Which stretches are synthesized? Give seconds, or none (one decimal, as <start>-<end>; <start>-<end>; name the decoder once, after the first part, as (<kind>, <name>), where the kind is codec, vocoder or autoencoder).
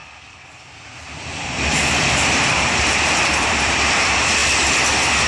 0.0-4.4 (vocoder, BigVGAN v2)